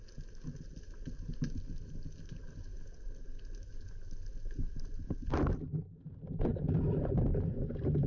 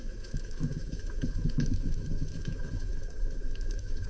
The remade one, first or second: second